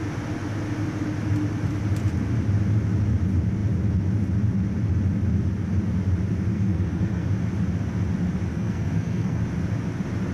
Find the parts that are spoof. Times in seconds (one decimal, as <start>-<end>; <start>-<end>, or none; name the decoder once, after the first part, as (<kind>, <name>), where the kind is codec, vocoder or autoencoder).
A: 6.5-7.3 (codec, SNAC); 8.5-9.4

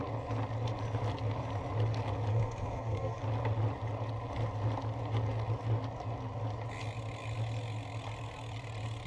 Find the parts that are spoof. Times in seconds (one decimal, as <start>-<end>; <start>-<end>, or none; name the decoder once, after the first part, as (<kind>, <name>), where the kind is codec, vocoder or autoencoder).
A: 2.3-3.2 (codec, SNAC)

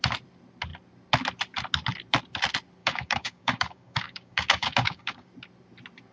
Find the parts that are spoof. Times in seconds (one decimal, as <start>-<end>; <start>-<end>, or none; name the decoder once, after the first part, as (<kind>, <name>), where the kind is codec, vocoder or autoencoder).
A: 2.8-5.3 (codec, DAC)

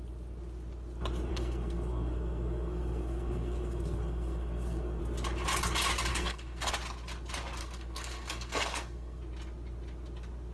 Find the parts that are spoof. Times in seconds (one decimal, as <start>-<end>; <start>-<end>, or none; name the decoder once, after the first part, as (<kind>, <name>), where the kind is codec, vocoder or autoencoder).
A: 1.3-5.0 (codec, SNAC); 6.1-6.7; 7.6-9.2

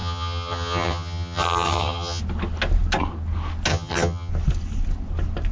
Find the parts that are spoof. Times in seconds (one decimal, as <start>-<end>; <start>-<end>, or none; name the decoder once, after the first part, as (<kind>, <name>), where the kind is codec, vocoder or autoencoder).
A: 0.0-2.2 (vocoder, HiFi-GAN); 3.7-4.3

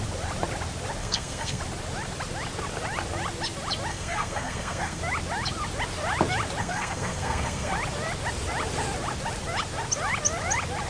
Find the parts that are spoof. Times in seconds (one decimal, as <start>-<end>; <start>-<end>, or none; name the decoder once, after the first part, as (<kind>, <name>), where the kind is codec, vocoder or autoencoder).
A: 1.0-1.6 (codec, SNAC); 3.9-5.0; 6.6-7.7